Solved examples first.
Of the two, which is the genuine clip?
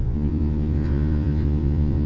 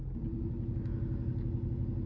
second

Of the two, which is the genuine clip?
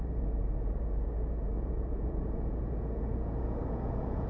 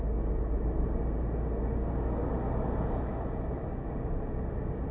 second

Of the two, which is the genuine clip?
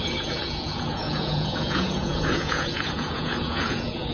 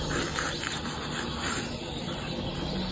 second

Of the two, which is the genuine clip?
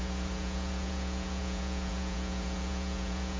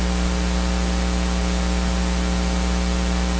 second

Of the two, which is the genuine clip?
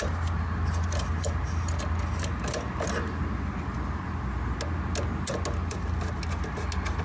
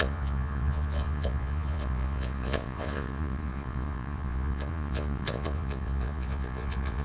first